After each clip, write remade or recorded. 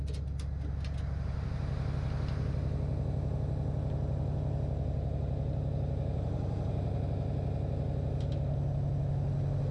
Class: recorded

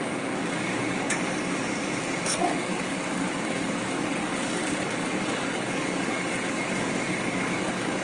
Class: remade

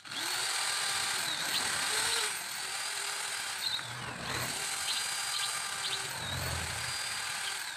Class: recorded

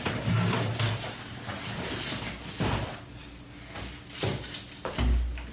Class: recorded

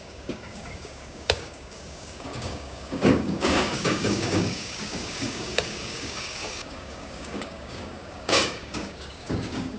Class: remade